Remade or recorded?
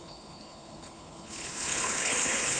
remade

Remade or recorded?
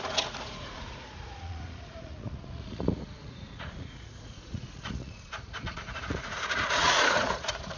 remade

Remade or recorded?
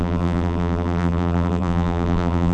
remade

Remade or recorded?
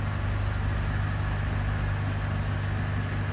recorded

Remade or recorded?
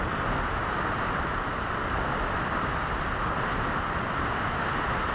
recorded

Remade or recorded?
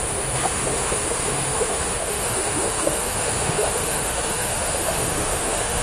remade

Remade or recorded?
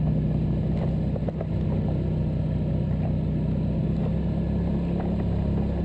recorded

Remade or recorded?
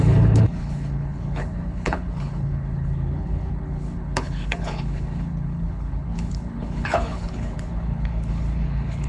remade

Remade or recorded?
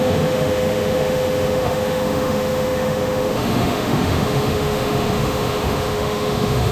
remade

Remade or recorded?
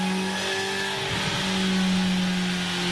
recorded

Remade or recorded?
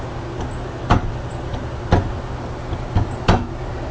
recorded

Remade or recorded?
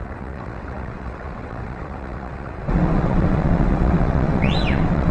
remade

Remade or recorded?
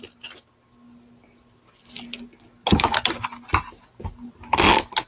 recorded